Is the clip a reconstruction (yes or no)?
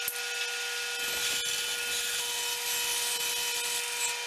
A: no